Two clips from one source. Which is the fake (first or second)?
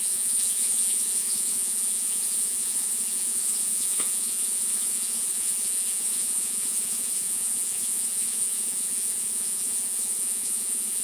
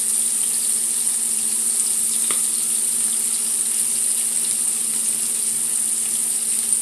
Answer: first